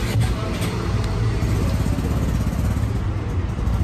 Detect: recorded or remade recorded